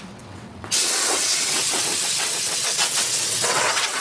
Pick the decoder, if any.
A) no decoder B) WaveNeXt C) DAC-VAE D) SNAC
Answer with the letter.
B